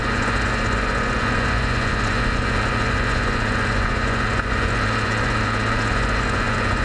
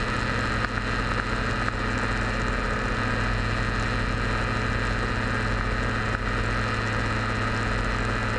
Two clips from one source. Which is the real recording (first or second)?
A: second